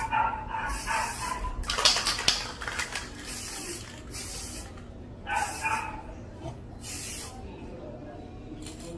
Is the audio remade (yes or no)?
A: no